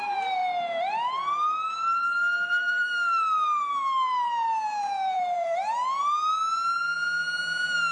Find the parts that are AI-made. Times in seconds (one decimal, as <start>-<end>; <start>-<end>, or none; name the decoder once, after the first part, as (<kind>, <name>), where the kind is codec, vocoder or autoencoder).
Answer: 0.0-0.4 (vocoder, BigVGAN v2); 2.5-5.8